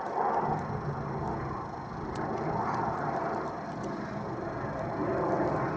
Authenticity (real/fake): real